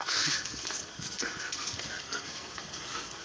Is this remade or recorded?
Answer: remade